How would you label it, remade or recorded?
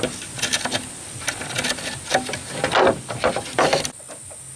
recorded